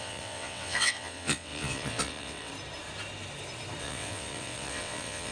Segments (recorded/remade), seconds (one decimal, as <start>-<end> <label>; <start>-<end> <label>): 0.0-2.5 remade; 2.5-3.8 recorded; 3.8-5.3 remade